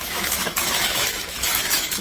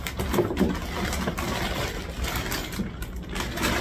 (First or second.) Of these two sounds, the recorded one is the second